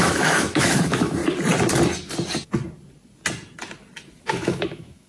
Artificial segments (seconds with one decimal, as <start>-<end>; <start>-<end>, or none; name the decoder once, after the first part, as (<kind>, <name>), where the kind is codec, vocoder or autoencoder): 0.0-1.2 (autoencoder, DAC-VAE); 4.3-5.1